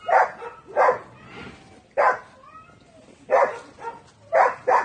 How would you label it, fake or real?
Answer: real